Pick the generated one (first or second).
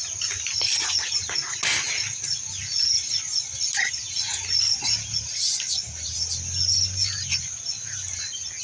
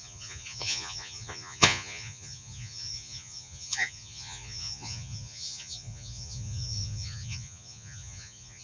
second